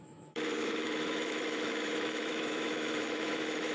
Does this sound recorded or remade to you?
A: remade